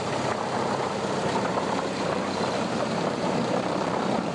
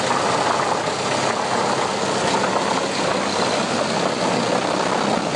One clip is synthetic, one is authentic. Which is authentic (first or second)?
second